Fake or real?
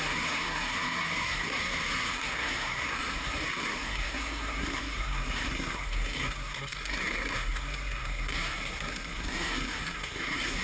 fake